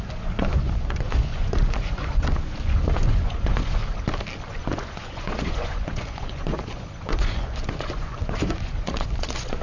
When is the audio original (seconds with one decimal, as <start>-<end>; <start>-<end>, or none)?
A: 3.8-4.5